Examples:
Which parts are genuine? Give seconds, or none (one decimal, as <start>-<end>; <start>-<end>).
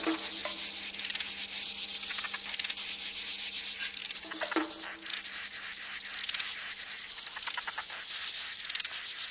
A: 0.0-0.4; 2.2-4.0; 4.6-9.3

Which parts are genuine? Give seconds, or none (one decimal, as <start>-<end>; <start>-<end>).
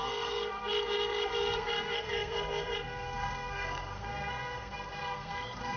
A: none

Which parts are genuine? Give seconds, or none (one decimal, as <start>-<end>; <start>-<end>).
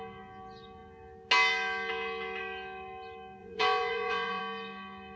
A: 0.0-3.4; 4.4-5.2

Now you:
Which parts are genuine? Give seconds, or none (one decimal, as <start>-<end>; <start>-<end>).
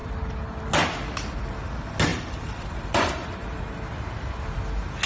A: 0.6-2.1; 3.6-5.1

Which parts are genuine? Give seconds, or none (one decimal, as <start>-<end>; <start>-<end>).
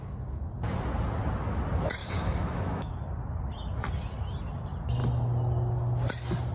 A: 0.0-2.0; 2.9-6.5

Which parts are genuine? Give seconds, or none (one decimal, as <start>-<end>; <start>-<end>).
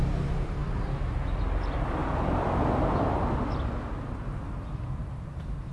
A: 0.6-1.4; 2.0-4.7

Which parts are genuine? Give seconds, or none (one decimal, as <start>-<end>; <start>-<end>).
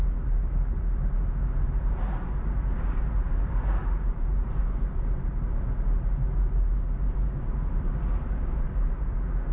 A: 0.0-3.8; 4.6-7.0; 7.8-9.5